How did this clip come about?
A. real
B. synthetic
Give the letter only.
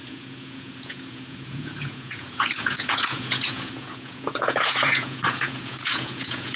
B